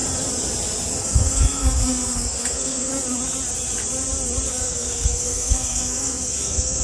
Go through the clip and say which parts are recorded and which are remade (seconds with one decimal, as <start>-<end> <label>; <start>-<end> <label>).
0.0-1.0 recorded; 1.0-2.9 remade; 2.9-4.5 recorded; 4.5-6.8 remade